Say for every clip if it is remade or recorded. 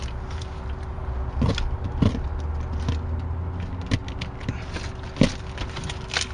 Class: recorded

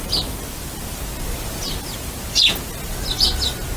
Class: recorded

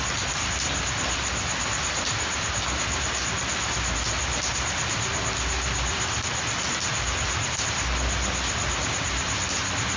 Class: recorded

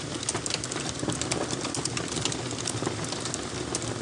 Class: recorded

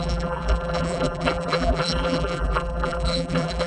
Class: remade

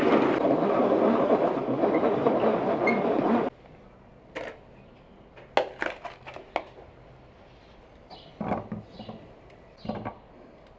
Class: recorded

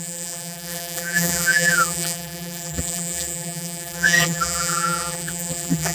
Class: remade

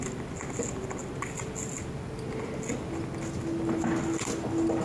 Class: recorded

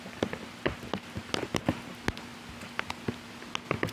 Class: recorded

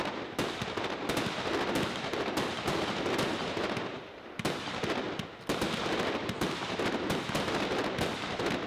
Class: recorded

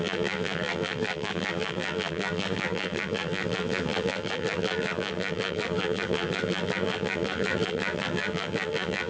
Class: remade